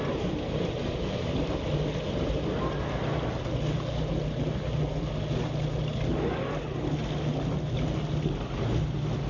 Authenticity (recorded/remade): recorded